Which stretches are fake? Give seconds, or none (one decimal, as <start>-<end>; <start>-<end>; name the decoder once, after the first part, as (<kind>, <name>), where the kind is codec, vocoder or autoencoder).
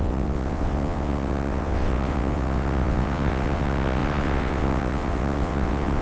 0.0-6.0 (vocoder, WaveNeXt)